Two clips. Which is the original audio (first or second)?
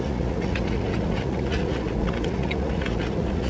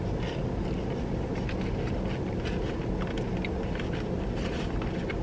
second